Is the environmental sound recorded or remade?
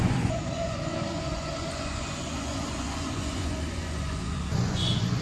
remade